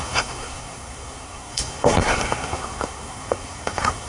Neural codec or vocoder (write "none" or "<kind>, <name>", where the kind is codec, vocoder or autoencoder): codec, SNAC